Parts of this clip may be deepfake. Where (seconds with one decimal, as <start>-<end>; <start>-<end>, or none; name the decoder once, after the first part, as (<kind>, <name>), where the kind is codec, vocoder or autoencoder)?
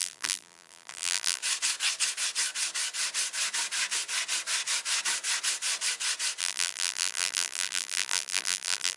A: 0.0-1.4 (vocoder, BigVGAN v2); 6.4-9.0